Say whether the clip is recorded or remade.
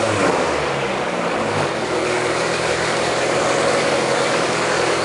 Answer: remade